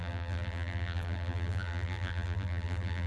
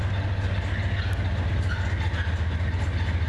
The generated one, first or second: first